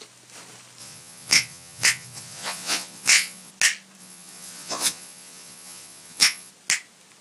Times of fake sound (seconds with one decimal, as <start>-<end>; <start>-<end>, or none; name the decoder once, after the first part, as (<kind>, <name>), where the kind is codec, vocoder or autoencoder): 0.8-3.5 (vocoder, Vocos); 4.0-6.5